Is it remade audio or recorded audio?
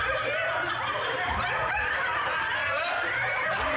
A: remade